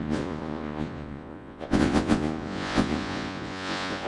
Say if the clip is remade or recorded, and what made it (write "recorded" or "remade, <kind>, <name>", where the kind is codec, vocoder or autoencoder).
remade, vocoder, Vocos